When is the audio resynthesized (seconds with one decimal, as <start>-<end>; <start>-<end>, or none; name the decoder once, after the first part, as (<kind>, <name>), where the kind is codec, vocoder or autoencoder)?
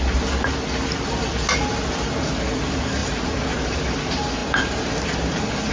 3.0-3.8 (vocoder, BigVGAN v2)